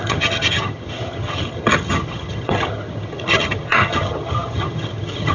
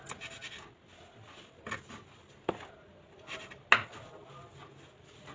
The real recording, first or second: second